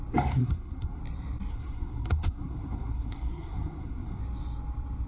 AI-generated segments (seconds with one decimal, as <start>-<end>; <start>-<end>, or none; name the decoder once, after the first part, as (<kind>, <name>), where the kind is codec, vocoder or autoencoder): 0.4-1.0 (codec, SNAC); 1.5-4.2